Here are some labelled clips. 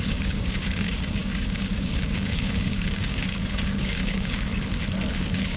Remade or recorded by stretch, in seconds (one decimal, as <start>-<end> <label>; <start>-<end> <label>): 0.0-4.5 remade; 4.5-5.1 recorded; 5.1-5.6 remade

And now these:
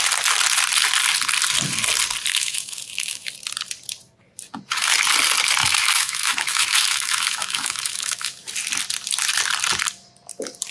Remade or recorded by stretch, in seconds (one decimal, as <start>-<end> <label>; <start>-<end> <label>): 0.0-2.3 recorded; 2.3-3.3 remade; 3.3-5.6 recorded; 5.6-8.4 remade; 8.4-10.7 recorded

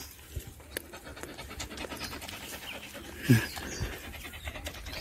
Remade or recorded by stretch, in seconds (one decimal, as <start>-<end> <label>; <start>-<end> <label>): 0.0-5.0 recorded

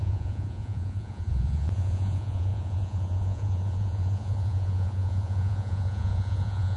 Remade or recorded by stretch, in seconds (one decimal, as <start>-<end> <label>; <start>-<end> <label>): 0.0-6.8 remade

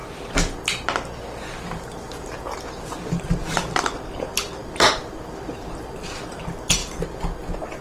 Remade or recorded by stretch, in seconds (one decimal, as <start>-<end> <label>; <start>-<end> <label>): 0.0-3.2 recorded; 3.2-6.8 remade; 6.8-7.8 recorded